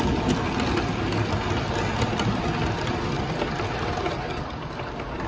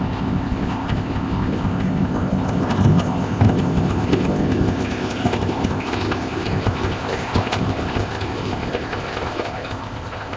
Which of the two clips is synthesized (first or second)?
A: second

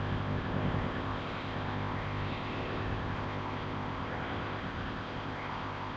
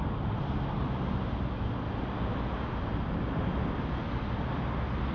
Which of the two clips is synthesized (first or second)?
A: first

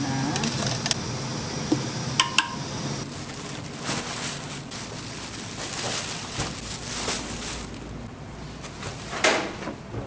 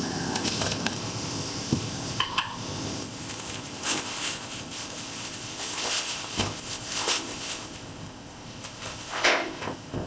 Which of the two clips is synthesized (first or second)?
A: second